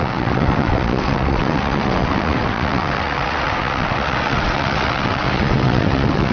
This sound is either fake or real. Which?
fake